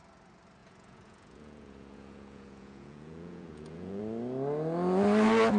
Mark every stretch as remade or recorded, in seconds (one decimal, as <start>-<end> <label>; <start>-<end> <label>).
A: 0.0-0.6 recorded; 0.6-4.0 remade; 4.0-5.6 recorded